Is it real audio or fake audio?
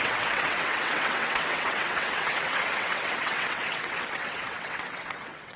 fake